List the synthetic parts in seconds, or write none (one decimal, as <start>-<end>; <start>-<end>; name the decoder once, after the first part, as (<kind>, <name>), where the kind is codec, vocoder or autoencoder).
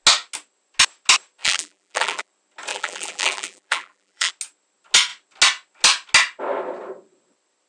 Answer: 1.4-2.3 (vocoder, BigVGAN v2); 2.7-4.3